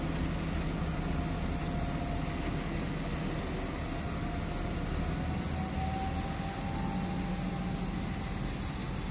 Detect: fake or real real